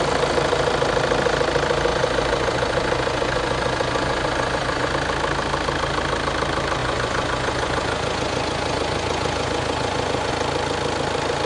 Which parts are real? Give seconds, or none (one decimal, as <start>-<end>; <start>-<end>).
0.0-1.9; 4.9-6.8; 10.3-11.5